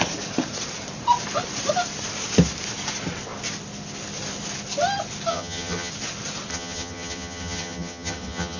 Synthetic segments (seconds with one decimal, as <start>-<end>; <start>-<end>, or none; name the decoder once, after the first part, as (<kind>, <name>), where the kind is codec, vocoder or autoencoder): 5.3-5.9 (vocoder, HiFi-GAN); 6.5-8.6